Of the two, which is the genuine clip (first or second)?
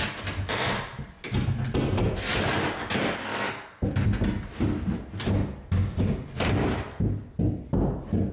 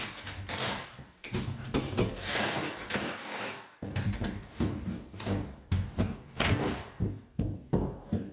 first